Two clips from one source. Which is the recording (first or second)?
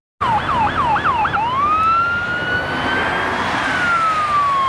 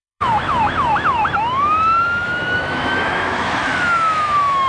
first